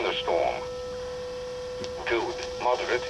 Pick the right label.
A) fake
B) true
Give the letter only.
B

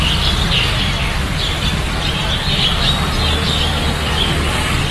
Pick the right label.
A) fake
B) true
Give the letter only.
B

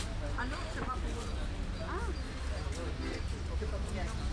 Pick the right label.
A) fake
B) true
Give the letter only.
B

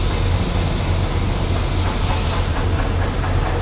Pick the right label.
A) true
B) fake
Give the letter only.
A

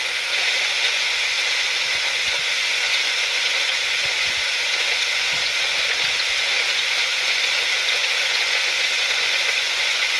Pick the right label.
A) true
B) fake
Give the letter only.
B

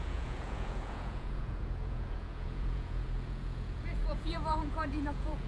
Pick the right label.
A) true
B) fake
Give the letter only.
B